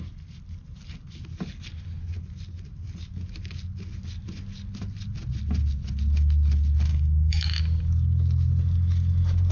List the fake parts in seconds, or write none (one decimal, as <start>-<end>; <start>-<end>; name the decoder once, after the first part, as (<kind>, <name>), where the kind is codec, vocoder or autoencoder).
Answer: 6.9-7.6 (codec, DAC)